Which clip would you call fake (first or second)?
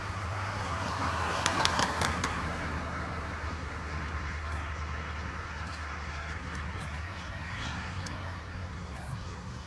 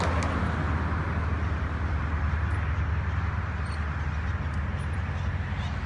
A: first